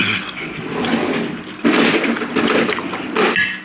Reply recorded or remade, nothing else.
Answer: recorded